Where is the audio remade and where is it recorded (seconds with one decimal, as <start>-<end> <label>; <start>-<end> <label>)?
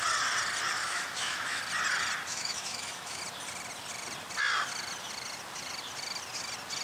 0.0-0.8 recorded; 0.8-1.6 remade; 1.6-2.3 recorded; 2.3-3.2 remade; 3.2-6.8 recorded